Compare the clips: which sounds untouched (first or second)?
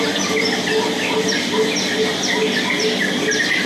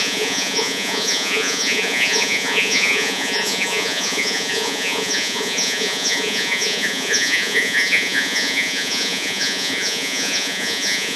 first